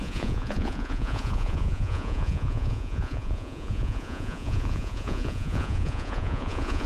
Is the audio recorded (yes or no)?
no